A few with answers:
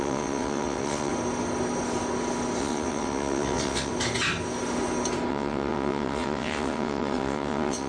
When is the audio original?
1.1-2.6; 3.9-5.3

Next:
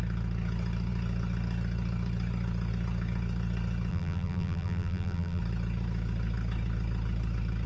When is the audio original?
0.0-3.9; 5.4-7.7